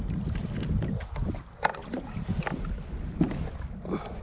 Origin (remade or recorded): recorded